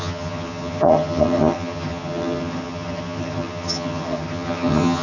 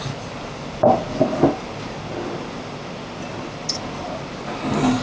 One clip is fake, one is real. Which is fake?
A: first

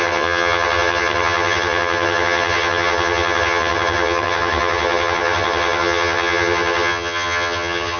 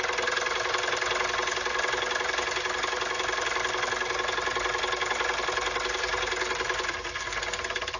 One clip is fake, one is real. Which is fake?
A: first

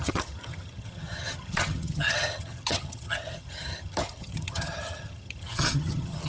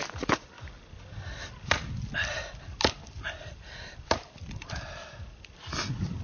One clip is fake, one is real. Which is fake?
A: first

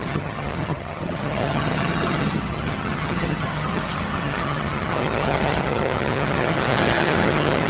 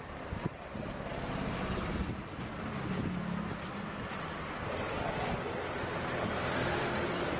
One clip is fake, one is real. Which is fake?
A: first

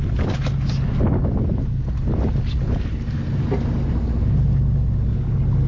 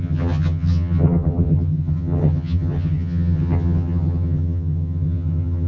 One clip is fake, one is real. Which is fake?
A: second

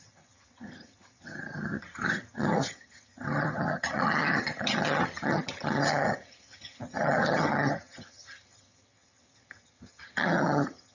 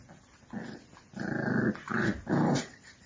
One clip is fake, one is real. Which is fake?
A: first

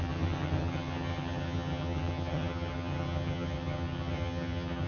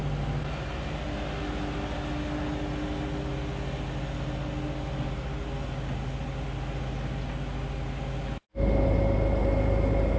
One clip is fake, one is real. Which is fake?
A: first